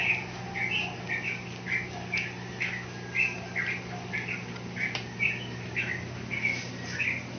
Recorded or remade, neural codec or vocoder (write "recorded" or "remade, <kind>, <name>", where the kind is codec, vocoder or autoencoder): recorded